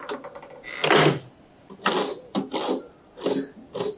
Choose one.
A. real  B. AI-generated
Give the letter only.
A